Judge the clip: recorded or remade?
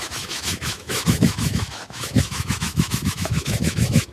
remade